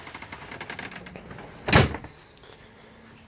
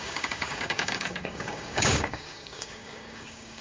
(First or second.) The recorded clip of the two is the first